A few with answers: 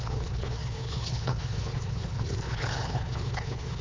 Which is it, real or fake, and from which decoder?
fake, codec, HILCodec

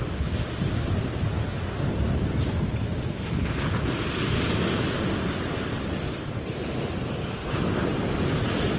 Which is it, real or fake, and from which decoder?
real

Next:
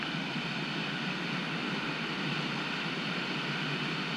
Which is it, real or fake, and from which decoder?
real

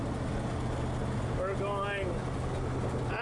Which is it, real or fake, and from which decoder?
real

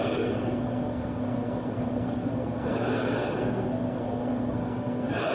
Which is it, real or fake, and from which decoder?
fake, codec, SNAC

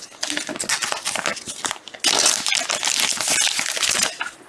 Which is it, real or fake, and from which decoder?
real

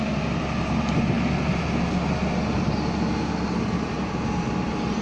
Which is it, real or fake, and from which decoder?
real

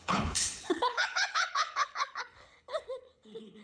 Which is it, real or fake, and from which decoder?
fake, codec, HILCodec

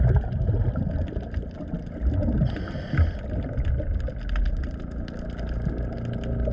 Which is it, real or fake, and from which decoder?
real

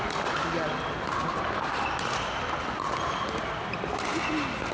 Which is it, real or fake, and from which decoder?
real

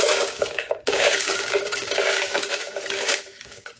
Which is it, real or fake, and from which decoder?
fake, codec, DAC